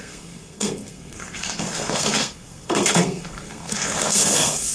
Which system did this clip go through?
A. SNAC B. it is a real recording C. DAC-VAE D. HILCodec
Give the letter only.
A